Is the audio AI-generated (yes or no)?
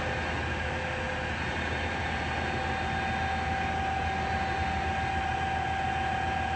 no